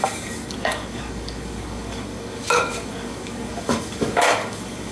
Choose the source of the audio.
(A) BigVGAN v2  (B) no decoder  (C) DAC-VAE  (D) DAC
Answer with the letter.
D